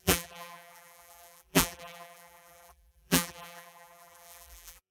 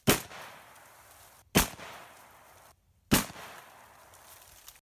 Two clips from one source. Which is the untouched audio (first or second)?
second